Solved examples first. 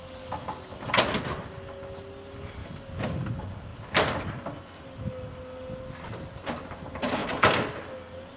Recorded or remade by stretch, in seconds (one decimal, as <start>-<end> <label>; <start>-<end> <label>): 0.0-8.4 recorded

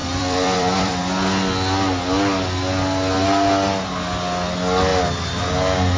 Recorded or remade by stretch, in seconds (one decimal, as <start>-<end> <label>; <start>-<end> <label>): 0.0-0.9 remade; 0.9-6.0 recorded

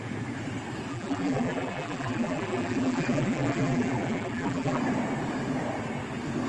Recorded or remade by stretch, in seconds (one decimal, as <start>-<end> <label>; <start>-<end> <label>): 0.0-0.9 recorded; 0.9-4.8 remade; 4.8-6.5 recorded

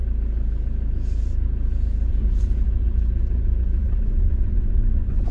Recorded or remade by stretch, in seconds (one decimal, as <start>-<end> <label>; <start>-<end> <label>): 0.0-3.8 recorded; 3.8-5.3 remade